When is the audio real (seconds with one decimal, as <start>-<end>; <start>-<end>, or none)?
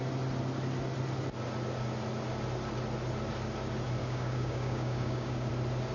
0.0-4.0; 5.5-5.9